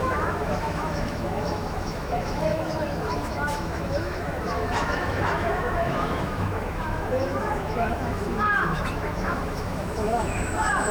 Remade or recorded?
remade